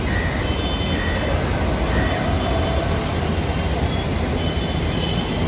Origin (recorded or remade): recorded